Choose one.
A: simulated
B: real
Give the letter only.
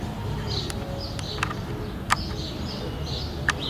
B